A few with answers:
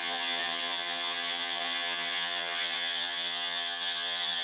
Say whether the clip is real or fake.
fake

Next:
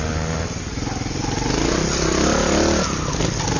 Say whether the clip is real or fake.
real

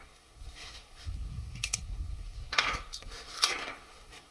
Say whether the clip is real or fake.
fake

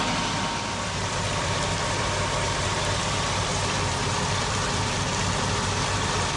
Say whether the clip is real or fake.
fake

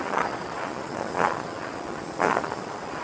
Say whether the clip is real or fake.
fake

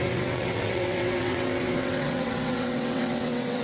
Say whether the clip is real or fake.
fake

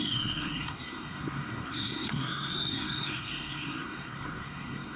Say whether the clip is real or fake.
fake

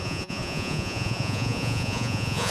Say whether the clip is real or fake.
fake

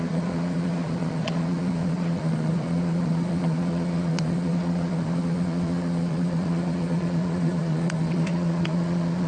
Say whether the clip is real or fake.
fake